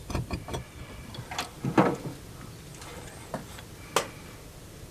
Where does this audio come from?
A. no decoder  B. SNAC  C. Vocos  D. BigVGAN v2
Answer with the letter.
A